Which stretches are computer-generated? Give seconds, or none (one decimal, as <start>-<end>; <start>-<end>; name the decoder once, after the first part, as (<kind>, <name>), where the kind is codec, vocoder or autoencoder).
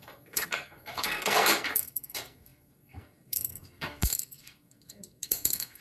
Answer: 0.0-5.8 (codec, SNAC)